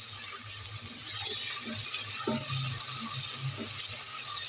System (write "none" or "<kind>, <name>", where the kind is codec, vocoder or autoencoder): none